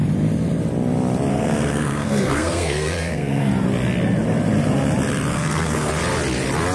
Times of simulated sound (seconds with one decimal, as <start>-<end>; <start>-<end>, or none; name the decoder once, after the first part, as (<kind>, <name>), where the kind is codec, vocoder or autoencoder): 1.3-3.5 (codec, SNAC); 5.3-5.9